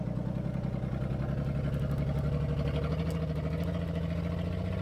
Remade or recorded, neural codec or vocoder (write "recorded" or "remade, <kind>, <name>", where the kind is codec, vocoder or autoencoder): recorded